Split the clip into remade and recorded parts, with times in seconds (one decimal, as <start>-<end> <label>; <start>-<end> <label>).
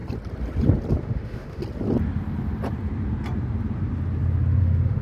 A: 0.0-1.0 recorded; 1.0-1.6 remade; 1.6-4.6 recorded; 4.6-5.0 remade